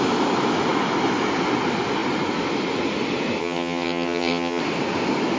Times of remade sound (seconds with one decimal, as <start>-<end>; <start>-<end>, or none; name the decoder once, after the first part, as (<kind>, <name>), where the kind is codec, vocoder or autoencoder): 3.4-4.6 (vocoder, HiFi-GAN)